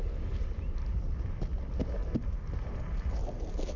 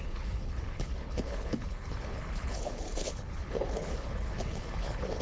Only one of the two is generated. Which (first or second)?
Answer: second